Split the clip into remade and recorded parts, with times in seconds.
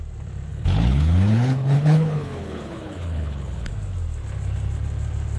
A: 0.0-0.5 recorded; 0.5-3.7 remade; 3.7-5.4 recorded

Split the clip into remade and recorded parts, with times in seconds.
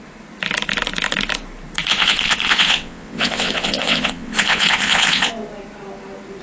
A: 0.0-1.9 recorded; 1.9-5.3 remade; 5.3-6.4 recorded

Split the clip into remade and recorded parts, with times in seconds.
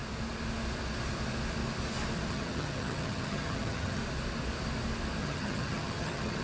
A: 0.0-2.3 recorded; 2.3-4.0 remade; 4.0-5.2 recorded; 5.2-6.4 remade